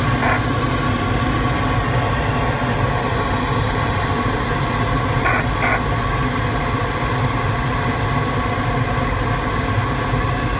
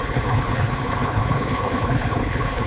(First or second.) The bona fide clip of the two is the first